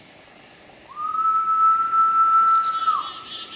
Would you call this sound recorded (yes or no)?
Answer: yes